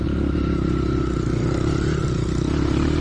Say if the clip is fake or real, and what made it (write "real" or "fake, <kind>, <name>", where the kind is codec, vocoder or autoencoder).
real